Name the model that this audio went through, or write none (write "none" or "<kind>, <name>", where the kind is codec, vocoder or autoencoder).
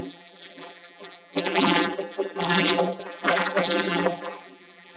vocoder, BigVGAN v2